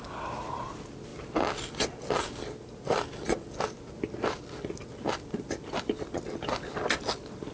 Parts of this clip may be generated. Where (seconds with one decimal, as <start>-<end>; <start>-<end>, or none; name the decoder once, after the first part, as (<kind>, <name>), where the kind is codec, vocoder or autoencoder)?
none